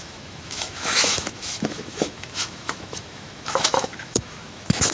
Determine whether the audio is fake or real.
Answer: fake